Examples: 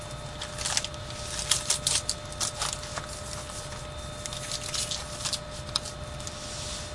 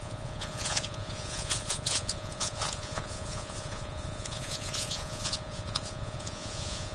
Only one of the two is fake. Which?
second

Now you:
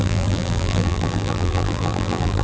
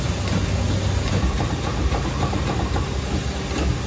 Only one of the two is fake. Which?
first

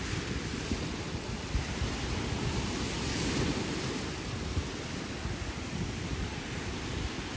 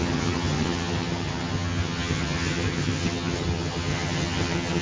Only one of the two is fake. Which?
second